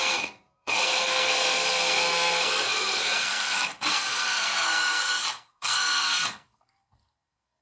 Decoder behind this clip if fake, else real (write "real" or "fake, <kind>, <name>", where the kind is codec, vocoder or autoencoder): fake, codec, SNAC